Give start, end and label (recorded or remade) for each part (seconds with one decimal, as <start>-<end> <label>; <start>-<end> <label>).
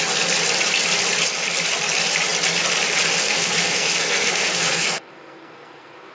0.0-3.2 recorded; 3.2-6.1 remade